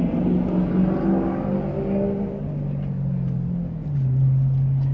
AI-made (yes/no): no